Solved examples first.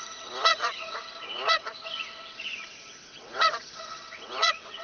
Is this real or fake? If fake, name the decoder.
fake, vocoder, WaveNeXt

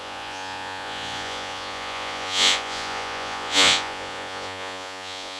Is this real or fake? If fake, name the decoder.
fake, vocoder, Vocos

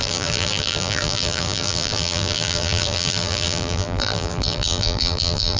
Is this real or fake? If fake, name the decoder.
fake, vocoder, BigVGAN v2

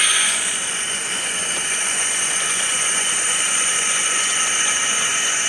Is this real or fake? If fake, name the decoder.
fake, vocoder, Vocos